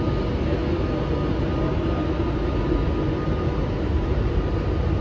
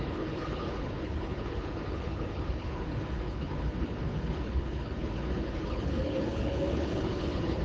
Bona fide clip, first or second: first